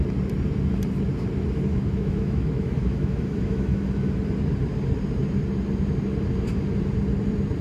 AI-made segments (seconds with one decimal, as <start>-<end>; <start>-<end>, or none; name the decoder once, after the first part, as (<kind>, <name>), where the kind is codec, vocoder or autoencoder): 1.7-4.1 (autoencoder, DAC-VAE)